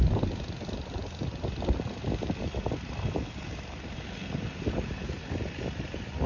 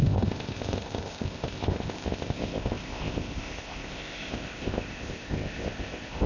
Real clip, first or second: first